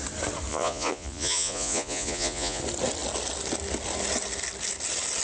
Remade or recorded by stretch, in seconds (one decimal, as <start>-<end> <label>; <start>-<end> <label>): 0.0-0.5 recorded; 0.5-2.6 remade; 2.6-5.2 recorded

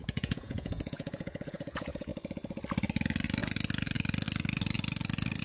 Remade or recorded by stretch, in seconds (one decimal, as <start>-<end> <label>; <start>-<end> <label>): 0.0-2.1 remade; 2.1-5.4 recorded

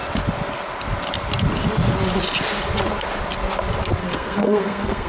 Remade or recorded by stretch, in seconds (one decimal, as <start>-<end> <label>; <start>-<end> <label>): 0.0-4.0 recorded; 4.0-5.1 remade